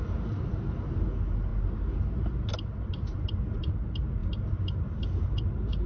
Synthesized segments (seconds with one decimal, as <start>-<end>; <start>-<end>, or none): none